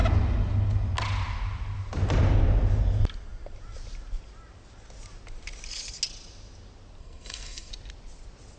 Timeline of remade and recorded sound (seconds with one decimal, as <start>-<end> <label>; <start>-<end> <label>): 0.0-7.0 recorded; 7.0-7.7 remade; 7.7-8.6 recorded